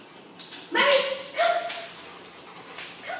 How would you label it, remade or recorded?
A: recorded